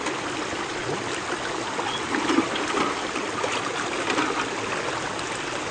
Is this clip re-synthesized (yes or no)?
no